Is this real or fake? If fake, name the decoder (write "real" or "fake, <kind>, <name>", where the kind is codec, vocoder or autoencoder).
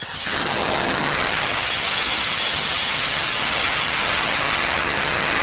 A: fake, vocoder, HiFi-GAN